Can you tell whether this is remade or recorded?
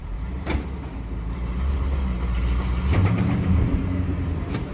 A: remade